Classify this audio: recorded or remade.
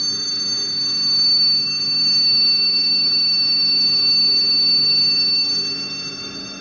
remade